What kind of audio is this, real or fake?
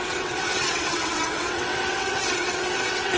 fake